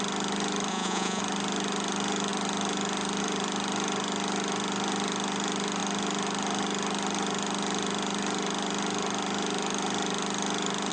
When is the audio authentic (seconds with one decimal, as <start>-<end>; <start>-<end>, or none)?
0.0-0.7; 1.2-10.9